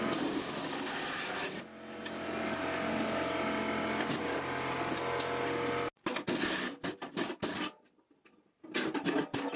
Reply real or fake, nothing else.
real